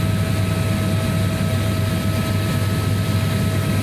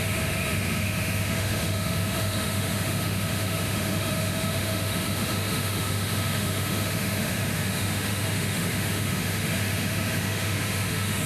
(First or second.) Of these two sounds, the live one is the first